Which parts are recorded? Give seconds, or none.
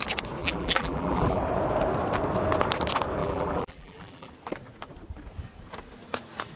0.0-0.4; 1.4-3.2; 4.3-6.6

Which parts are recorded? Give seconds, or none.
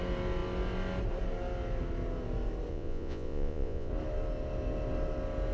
0.0-2.7; 3.9-5.5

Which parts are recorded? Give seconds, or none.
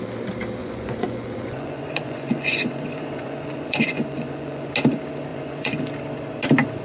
0.0-0.6; 4.7-5.3; 5.8-6.8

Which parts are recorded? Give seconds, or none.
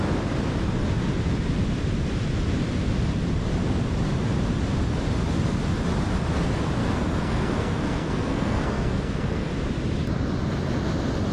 0.0-6.8; 9.5-11.3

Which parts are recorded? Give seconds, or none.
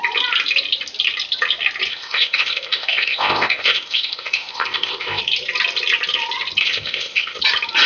0.0-1.9; 5.2-6.6; 7.4-7.9